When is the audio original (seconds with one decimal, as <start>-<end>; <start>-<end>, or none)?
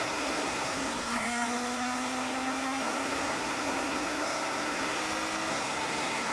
5.0-5.5